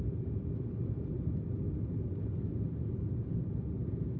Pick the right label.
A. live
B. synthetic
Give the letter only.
A